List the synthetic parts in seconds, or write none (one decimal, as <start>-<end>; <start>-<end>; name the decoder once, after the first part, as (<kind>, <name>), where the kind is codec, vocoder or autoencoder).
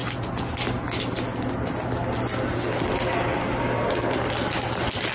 none